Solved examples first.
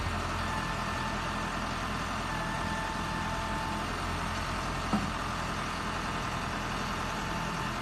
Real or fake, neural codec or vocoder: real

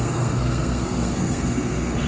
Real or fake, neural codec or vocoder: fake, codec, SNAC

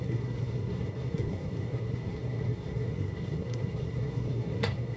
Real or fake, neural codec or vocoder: fake, codec, SNAC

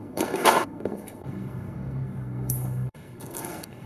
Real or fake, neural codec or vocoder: fake, codec, SNAC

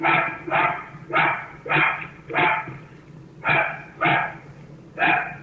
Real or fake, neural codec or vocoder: real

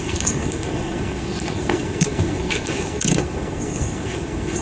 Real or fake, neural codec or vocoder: fake, codec, SNAC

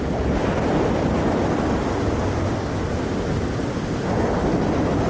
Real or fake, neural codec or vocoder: real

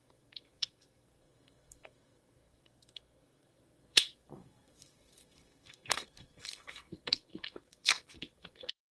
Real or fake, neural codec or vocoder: fake, codec, SNAC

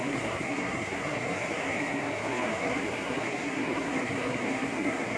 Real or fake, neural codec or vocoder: fake, codec, SNAC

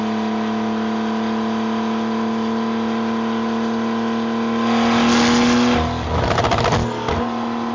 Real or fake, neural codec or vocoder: real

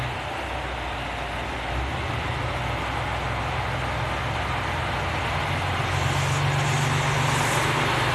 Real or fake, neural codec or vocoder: real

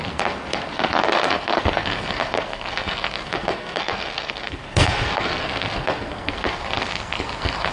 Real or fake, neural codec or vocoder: fake, codec, SNAC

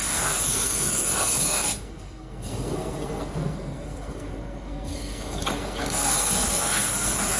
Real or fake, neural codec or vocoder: fake, codec, SNAC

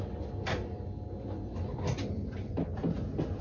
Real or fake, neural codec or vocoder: real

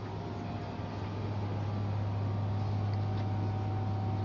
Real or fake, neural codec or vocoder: real